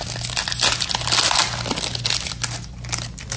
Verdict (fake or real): real